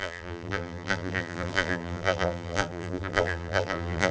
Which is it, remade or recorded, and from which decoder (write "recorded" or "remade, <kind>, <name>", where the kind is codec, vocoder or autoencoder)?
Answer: remade, vocoder, BigVGAN v2